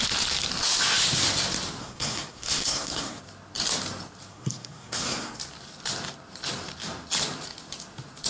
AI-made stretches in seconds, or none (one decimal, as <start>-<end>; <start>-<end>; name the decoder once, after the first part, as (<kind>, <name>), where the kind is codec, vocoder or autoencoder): 1.8-3.2 (codec, SNAC); 4.3-5.4